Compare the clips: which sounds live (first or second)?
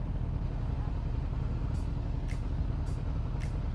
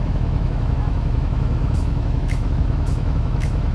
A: first